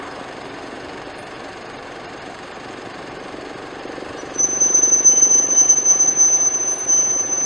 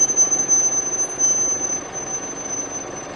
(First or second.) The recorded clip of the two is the second